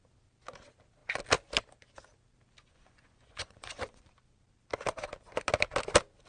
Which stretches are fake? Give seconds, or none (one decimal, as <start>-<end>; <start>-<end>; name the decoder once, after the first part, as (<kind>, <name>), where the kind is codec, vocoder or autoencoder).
2.6-4.1 (vocoder, Vocos)

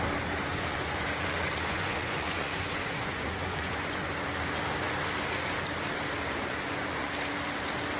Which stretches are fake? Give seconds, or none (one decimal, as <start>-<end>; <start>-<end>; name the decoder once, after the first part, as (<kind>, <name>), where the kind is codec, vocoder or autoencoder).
0.5-4.1 (vocoder, Vocos); 6.4-7.1

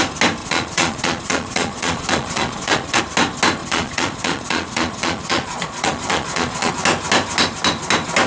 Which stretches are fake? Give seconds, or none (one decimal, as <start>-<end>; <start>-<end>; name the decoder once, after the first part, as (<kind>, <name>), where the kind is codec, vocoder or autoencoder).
0.4-3.0 (vocoder, Vocos); 3.6-6.7